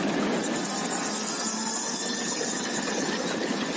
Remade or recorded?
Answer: recorded